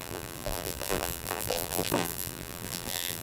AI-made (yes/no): yes